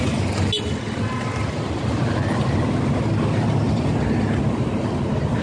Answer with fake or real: real